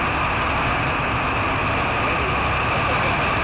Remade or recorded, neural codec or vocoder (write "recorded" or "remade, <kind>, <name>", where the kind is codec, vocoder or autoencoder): recorded